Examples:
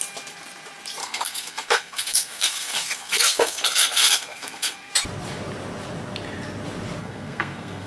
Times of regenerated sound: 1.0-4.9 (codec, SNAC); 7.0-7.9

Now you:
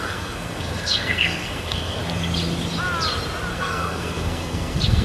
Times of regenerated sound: 0.0-2.0 (codec, SNAC); 3.5-5.0

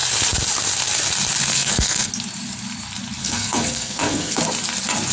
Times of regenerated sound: 1.5-2.1 (codec, SNAC); 3.2-4.4

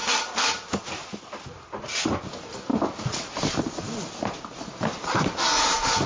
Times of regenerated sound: none

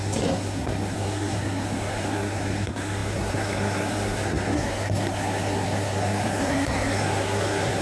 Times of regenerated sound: 0.0-7.8 (codec, SNAC)

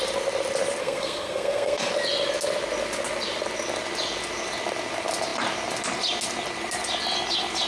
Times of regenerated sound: 0.8-1.9 (codec, SNAC)

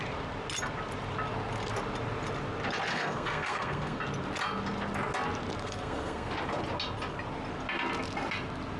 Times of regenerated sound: 2.9-4.0 (codec, SNAC); 5.6-6.3